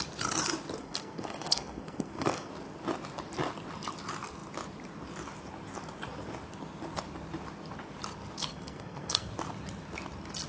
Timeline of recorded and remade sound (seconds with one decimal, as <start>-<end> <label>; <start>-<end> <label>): 0.0-0.8 recorded; 0.8-2.5 remade; 2.5-8.5 recorded; 8.5-9.3 remade; 9.3-10.5 recorded